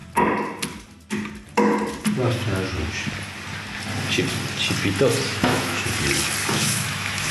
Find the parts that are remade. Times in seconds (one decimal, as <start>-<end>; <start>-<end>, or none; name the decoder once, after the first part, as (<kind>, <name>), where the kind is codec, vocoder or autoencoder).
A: 5.3-5.9 (autoencoder, DAC-VAE); 6.4-7.3